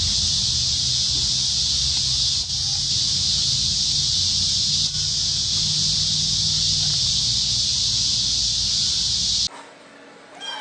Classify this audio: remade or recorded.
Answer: recorded